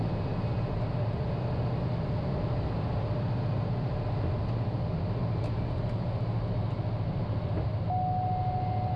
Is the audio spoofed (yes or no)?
no